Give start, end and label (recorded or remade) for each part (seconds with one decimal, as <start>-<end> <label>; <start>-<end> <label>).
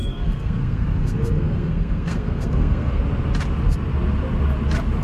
0.0-3.0 remade; 3.0-5.0 recorded